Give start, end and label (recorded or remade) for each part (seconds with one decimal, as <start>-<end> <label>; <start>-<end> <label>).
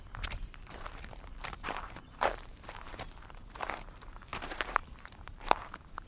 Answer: 0.0-6.1 remade